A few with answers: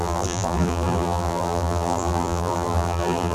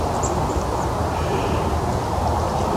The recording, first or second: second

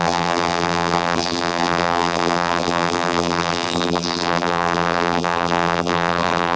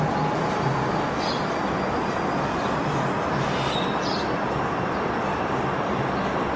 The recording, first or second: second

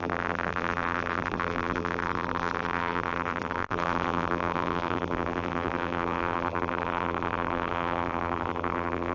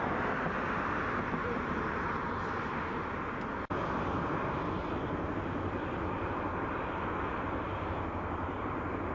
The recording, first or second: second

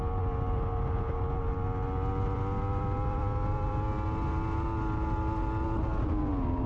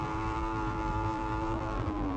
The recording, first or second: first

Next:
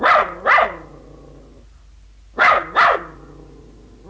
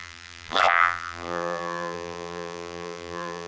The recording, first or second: first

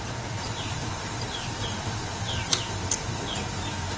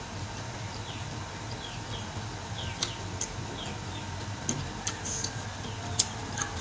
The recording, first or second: second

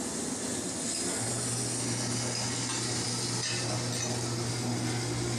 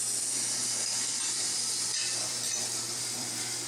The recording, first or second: first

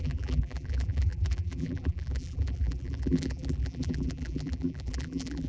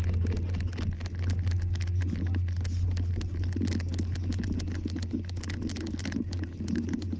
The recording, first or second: second